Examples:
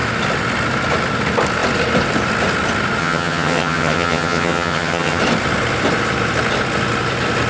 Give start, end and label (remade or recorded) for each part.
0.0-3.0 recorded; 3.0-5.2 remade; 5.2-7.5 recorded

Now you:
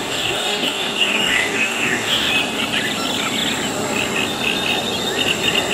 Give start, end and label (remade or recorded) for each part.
0.0-2.3 remade; 2.3-5.7 recorded

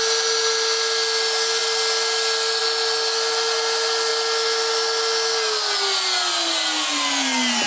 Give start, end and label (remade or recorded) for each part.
0.0-7.7 recorded

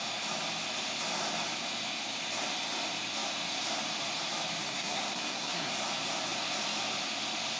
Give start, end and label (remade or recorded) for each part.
0.0-4.6 recorded; 4.6-5.7 remade; 5.7-7.6 recorded

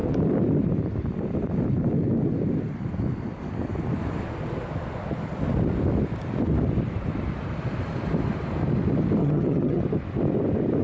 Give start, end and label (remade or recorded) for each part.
0.0-9.2 recorded; 9.2-9.8 remade; 9.8-10.8 recorded

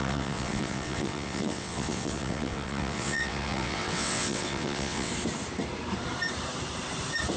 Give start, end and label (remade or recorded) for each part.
0.0-5.1 remade; 5.1-7.4 recorded

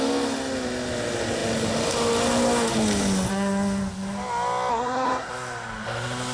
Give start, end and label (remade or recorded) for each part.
0.0-4.7 recorded; 4.7-5.3 remade; 5.3-6.3 recorded